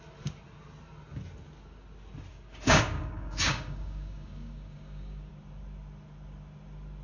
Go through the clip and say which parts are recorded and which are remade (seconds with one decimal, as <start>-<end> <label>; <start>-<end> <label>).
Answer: 0.0-2.3 recorded; 2.3-5.3 remade; 5.3-7.0 recorded